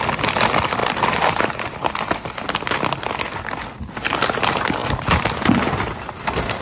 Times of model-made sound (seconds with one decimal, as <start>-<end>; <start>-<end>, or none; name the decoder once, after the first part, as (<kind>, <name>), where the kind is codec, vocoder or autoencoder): 0.8-1.9 (vocoder, BigVGAN v2); 4.8-5.7